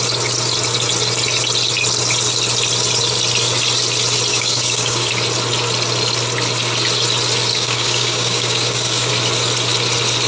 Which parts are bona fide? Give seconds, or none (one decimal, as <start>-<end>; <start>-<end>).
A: 0.0-4.3; 5.1-7.5; 9.1-10.3